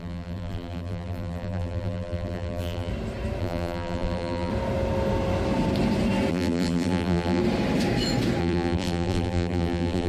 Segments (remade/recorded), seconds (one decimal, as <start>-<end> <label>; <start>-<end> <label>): 0.0-2.9 remade; 2.9-3.4 recorded; 3.4-4.5 remade; 4.5-6.3 recorded; 6.3-7.4 remade; 7.4-8.4 recorded; 8.4-10.1 remade

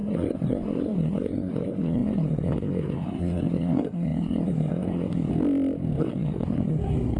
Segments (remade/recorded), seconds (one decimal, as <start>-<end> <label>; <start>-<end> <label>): 0.0-5.3 remade; 5.3-6.0 recorded; 6.0-7.2 remade

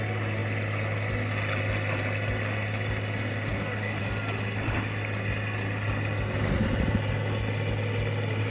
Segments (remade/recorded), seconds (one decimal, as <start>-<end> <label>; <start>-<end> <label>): 0.0-3.5 recorded; 3.5-4.0 remade; 4.0-8.5 recorded

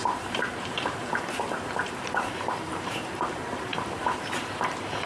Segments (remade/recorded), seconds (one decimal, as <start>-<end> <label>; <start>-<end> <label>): 0.0-5.1 remade

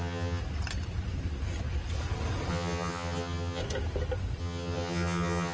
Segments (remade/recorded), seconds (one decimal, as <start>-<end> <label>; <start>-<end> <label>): 0.0-0.4 remade; 0.4-2.5 recorded; 2.5-3.6 remade; 3.6-4.4 recorded; 4.4-5.5 remade